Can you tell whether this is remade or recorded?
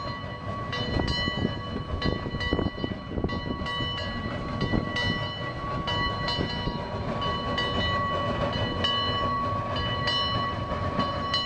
recorded